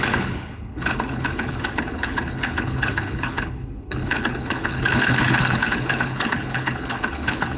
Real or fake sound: fake